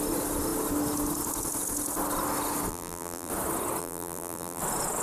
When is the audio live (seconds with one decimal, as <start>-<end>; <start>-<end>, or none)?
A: 0.0-2.7; 3.3-3.8; 4.6-5.0